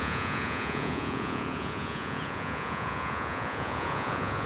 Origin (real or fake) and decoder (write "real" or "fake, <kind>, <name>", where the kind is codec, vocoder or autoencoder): fake, vocoder, Vocos